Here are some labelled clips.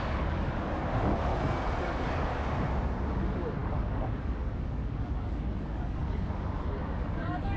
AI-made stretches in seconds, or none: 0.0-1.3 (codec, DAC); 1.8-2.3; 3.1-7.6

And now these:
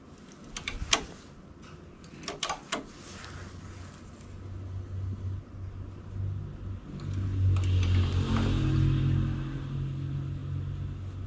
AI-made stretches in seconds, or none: none

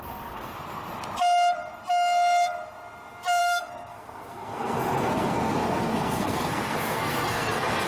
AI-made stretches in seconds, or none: 0.0-0.9 (codec, SNAC); 3.4-7.9

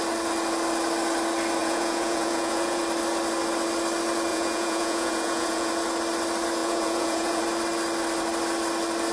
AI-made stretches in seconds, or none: 1.6-2.8 (vocoder, Vocos); 4.3-5.7; 6.6-7.4

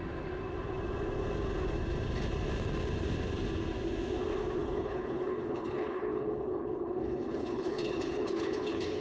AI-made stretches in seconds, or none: 4.6-9.0 (codec, HILCodec)

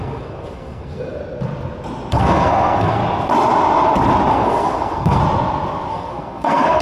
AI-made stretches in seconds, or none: 0.0-1.2 (codec, SNAC); 2.1-3.0; 4.3-5.2; 5.9-6.8

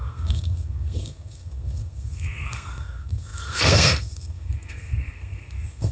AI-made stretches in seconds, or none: 0.0-5.9 (codec, SNAC)

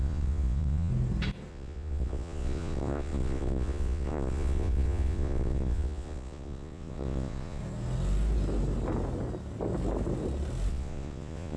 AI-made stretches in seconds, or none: 0.0-0.9 (vocoder, Vocos); 1.5-7.6; 10.7-11.6